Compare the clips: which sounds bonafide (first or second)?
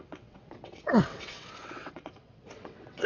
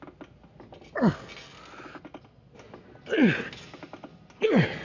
second